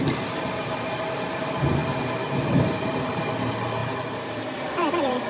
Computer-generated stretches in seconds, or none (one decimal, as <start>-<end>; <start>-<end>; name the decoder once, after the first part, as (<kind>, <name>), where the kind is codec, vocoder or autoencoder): 3.8-5.3 (vocoder, BigVGAN v2)